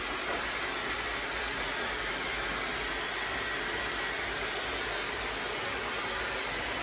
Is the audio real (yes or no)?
yes